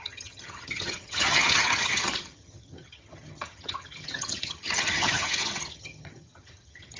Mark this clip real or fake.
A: fake